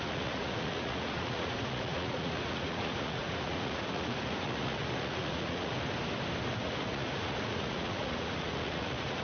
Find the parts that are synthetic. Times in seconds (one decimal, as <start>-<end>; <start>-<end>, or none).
0.0-5.7; 6.5-9.2